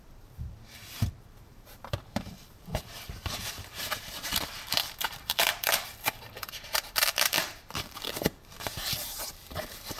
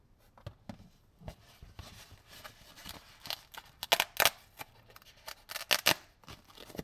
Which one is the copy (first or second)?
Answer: first